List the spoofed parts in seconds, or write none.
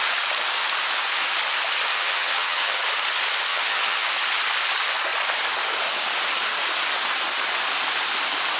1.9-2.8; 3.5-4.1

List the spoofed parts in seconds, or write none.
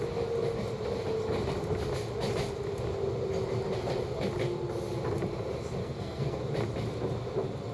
5.8-6.4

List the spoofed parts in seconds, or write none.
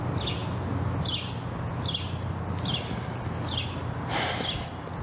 none